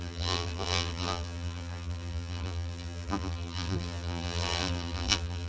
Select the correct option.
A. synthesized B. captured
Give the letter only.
A